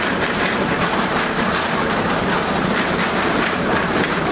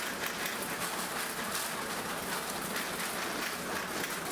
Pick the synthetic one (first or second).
first